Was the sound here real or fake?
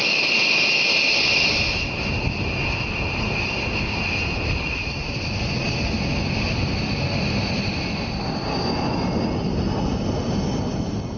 real